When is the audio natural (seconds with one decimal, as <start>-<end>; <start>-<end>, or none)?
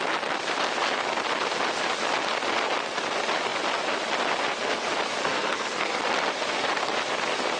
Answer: 0.0-5.2; 6.0-7.6